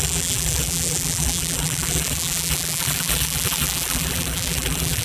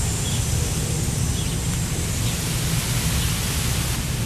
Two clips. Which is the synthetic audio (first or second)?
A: first